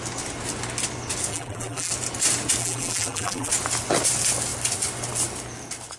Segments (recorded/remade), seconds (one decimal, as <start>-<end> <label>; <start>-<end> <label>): 0.0-1.3 recorded; 1.3-1.9 remade; 1.9-2.6 recorded; 2.6-3.5 remade; 3.5-6.0 recorded